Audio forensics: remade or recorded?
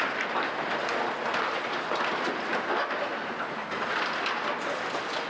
recorded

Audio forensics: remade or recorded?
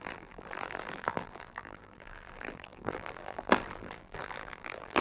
remade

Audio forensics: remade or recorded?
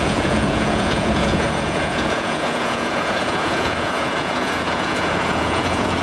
remade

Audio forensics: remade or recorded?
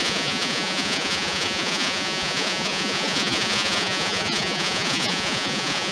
remade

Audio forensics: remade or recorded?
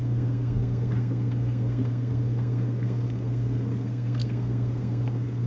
remade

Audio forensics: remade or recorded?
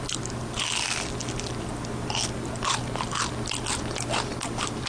recorded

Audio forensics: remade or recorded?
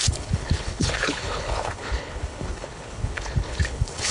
remade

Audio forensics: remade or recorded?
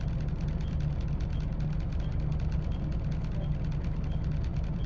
recorded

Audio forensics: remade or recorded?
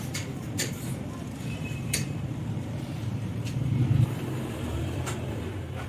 remade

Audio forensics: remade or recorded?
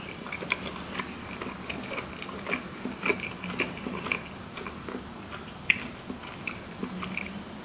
recorded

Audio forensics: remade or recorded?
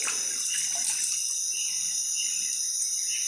recorded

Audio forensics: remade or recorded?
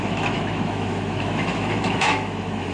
remade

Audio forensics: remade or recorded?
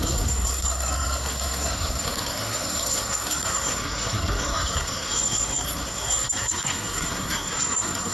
remade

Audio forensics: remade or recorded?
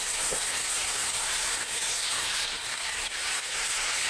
remade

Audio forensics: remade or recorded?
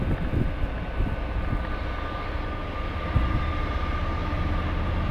recorded